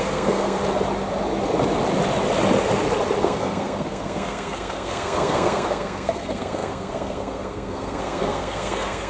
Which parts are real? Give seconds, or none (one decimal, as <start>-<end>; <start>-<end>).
0.6-3.2